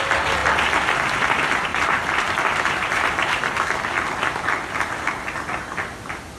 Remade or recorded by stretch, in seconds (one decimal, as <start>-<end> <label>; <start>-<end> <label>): 0.0-1.7 recorded; 1.7-3.5 remade; 3.5-6.4 recorded